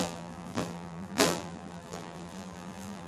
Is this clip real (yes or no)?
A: no